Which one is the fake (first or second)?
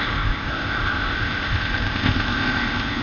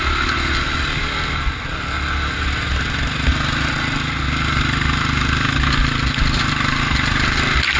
first